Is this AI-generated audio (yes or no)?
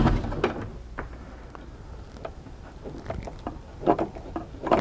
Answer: no